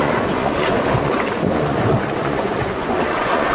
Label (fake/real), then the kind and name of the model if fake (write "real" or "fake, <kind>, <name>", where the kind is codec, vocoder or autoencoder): fake, vocoder, Vocos